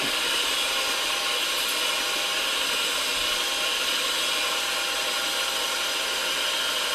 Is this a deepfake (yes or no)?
no